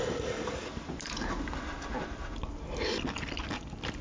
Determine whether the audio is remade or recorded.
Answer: recorded